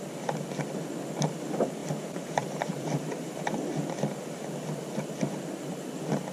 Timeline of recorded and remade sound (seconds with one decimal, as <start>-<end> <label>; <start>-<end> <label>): 0.0-1.8 recorded; 1.8-3.6 remade; 3.6-6.3 recorded